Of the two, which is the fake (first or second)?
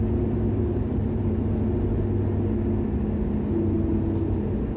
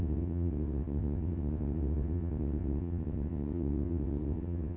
second